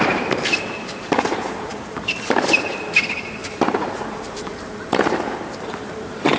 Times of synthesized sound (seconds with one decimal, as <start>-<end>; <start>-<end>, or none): 0.0-6.4